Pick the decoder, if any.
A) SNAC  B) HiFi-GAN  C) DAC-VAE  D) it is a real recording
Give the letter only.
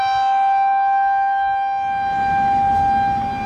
D